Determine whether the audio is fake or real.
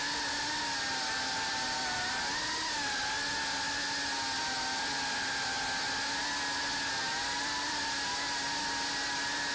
real